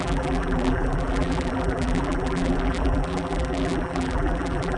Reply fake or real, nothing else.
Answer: fake